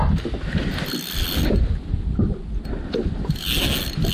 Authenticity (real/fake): real